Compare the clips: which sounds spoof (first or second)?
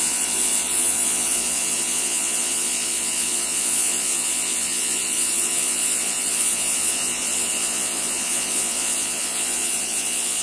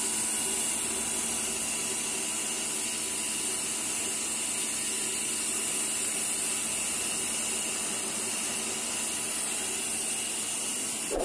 first